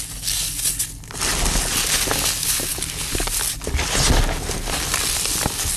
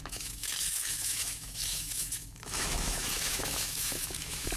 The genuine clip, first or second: first